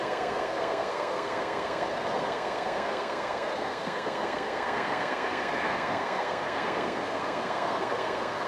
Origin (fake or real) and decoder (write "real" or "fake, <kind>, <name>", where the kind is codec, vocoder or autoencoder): fake, codec, SNAC